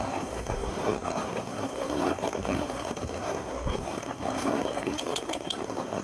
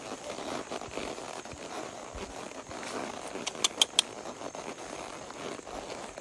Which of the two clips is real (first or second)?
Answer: second